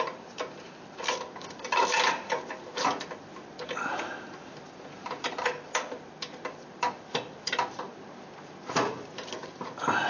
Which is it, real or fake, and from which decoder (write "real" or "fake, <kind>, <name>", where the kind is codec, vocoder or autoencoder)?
fake, vocoder, BigVGAN v2